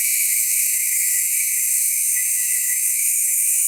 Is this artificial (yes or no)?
yes